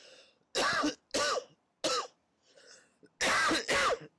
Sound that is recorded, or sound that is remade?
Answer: recorded